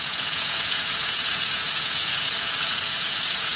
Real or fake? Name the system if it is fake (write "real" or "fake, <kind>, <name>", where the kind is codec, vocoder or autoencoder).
fake, vocoder, Vocos